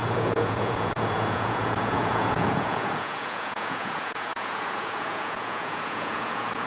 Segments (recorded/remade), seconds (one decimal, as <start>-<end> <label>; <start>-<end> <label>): 0.0-6.7 remade